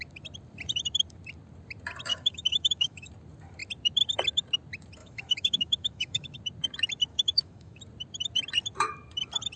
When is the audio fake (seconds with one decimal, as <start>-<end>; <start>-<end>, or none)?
2.1-3.1; 5.0-6.4; 7.1-7.8